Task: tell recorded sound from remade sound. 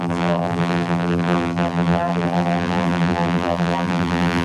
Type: remade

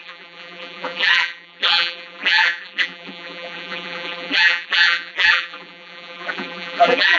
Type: remade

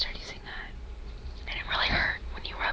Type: remade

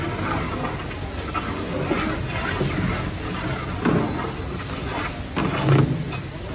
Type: recorded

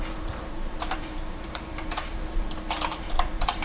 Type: remade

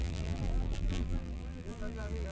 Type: remade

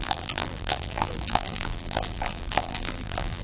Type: remade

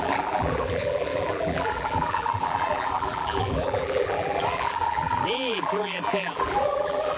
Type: remade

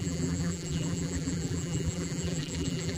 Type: remade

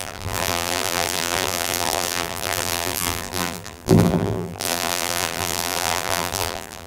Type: remade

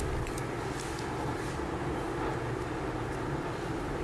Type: recorded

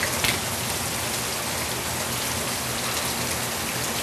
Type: recorded